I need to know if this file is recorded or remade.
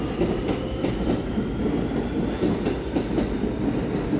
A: recorded